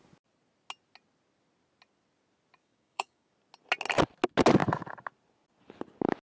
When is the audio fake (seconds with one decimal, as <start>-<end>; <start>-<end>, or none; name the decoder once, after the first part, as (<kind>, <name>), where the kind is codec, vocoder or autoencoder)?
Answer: 2.6-3.3 (codec, DAC)